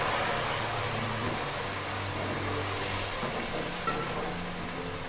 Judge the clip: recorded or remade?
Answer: recorded